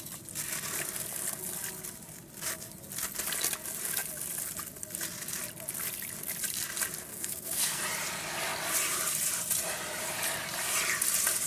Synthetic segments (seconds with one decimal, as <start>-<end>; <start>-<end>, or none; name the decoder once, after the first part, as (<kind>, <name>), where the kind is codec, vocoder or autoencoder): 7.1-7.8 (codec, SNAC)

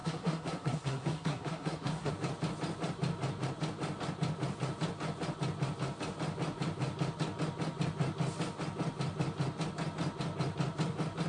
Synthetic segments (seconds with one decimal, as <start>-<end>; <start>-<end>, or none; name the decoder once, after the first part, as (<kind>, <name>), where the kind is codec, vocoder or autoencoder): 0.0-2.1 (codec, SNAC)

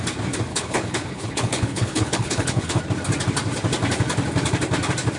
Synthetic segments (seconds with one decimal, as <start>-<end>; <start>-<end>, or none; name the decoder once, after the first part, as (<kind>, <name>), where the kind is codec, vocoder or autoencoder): 0.5-2.8 (codec, HILCodec)

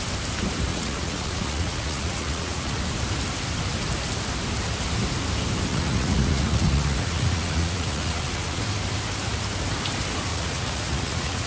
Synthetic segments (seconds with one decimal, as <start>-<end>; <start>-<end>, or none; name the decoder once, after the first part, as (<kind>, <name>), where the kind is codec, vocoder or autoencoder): 0.7-2.8 (vocoder, Vocos); 5.7-8.6; 10.3-11.5